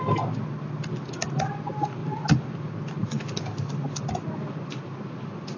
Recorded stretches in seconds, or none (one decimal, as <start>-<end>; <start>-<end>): 0.0-5.6